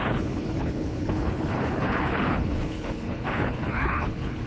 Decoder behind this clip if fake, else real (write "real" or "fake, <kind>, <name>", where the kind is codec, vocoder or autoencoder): fake, codec, HILCodec